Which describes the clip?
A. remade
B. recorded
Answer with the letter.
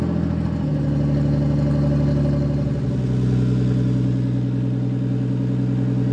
B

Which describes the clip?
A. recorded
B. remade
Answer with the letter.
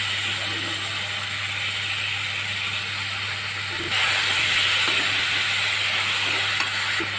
A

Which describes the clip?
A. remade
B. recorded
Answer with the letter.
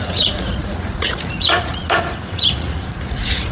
A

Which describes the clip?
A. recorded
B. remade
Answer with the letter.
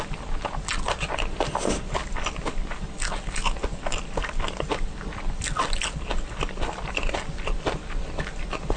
A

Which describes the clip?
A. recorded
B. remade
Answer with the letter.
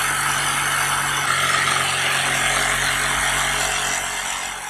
A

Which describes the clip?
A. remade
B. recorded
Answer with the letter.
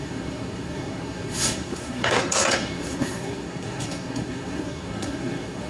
A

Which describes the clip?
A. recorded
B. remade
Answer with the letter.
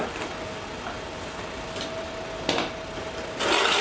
A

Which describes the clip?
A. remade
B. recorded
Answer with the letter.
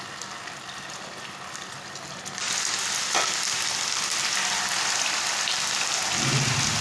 B